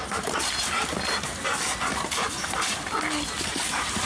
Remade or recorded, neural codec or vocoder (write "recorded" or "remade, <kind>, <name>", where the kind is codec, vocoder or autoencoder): recorded